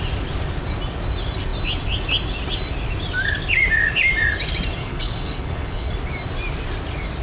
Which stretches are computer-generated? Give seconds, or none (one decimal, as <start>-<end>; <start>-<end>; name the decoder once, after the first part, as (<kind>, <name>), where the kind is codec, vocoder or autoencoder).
4.8-5.9 (codec, HILCodec)